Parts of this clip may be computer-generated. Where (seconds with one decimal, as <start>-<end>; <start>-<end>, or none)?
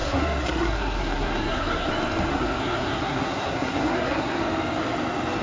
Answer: 0.0-1.9; 2.3-4.4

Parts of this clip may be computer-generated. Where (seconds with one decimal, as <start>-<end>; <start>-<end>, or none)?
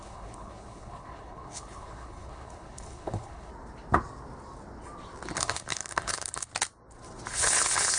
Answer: 0.0-3.5; 5.4-6.5; 7.3-8.0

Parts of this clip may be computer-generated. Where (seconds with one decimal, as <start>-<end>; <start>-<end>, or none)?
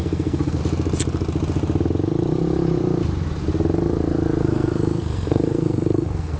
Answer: 0.0-0.6; 4.4-6.4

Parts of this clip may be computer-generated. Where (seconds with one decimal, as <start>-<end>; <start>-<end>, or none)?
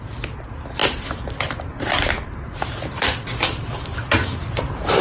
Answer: 0.8-3.8; 4.2-5.0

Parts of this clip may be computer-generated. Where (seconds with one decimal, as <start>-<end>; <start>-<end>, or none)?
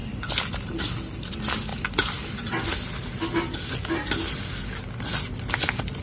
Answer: none